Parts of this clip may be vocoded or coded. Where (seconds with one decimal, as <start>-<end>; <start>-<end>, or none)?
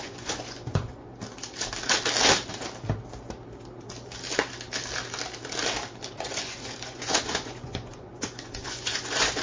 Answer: 0.0-1.1; 6.1-9.4